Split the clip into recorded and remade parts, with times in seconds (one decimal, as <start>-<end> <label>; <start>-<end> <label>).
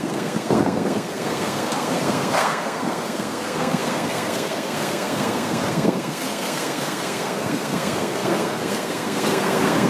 0.0-9.9 remade